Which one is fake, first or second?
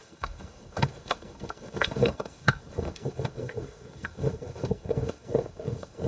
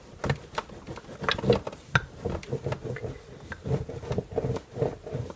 first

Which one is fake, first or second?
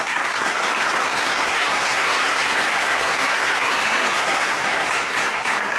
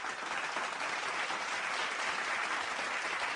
first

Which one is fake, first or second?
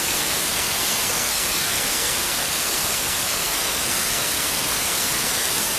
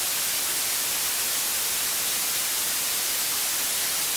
first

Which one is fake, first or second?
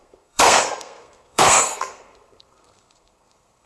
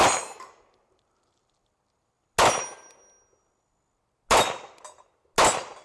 first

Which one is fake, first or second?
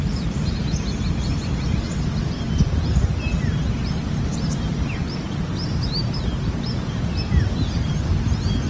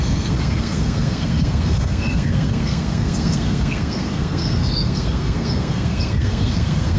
second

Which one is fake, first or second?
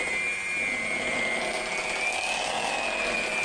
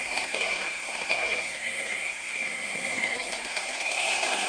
second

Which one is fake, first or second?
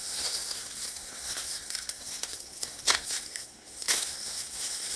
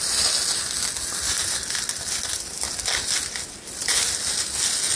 first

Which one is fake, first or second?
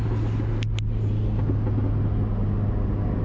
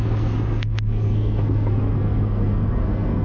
second